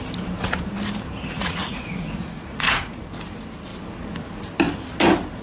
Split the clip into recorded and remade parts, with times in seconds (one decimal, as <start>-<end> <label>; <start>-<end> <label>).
0.0-1.2 recorded; 1.2-3.1 remade; 3.1-5.4 recorded